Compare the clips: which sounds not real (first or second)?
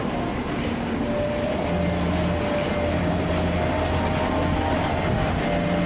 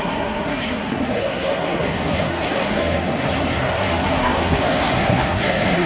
second